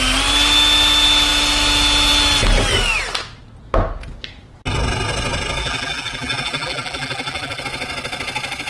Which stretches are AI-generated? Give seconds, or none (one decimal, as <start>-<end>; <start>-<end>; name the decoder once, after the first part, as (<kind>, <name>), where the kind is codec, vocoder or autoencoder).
5.6-7.6 (vocoder, BigVGAN v2)